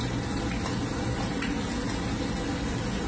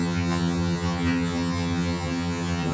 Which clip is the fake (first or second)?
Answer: second